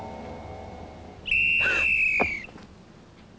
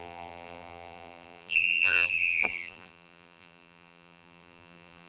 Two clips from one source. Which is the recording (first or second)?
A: first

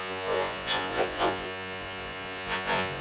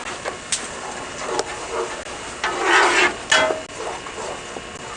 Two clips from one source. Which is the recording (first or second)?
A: second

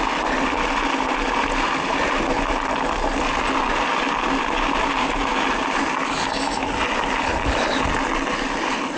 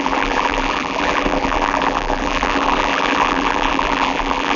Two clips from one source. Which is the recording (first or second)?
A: first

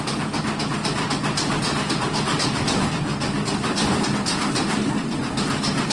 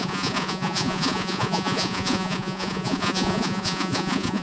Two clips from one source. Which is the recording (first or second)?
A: first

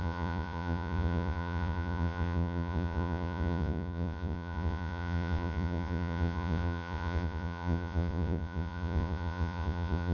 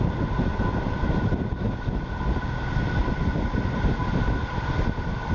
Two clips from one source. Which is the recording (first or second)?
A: second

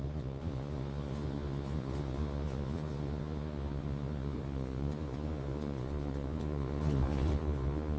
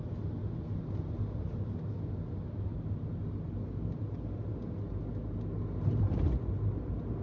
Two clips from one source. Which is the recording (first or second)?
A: second